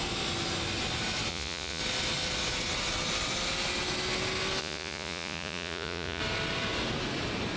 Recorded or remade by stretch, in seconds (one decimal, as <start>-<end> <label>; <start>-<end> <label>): 0.0-1.3 recorded; 1.3-1.8 remade; 1.8-4.6 recorded; 4.6-6.2 remade; 6.2-7.6 recorded